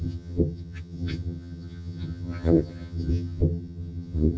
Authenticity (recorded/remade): remade